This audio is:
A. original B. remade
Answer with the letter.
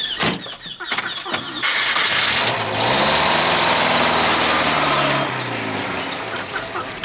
A